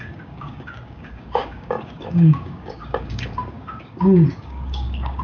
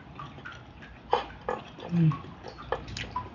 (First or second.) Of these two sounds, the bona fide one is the second